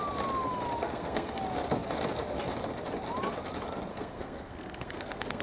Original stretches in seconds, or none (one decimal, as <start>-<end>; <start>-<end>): 0.0-0.8; 1.4-3.9